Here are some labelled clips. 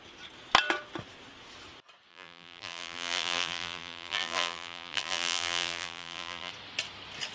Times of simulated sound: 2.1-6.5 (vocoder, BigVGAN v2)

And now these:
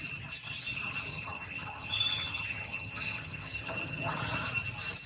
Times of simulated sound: 1.1-4.2 (vocoder, HiFi-GAN)